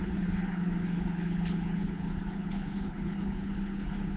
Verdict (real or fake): fake